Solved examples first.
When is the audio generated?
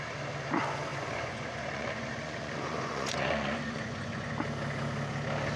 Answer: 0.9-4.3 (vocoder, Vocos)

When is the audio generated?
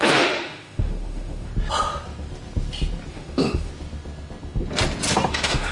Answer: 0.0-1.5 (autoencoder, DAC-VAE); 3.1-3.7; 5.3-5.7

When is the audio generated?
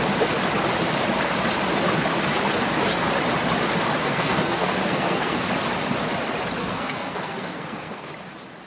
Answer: 4.0-5.5 (codec, SNAC); 6.6-8.1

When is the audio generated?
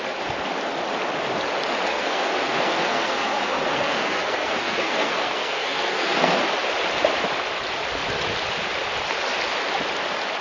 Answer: 1.9-6.4 (codec, SNAC)